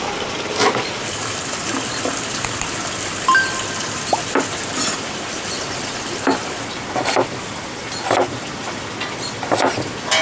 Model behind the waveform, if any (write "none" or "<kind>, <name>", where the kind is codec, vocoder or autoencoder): none